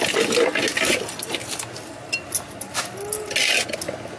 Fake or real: real